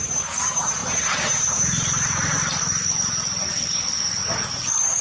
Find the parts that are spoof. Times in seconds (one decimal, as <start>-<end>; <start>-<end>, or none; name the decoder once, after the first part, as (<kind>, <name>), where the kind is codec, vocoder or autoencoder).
0.0-5.0 (vocoder, BigVGAN v2)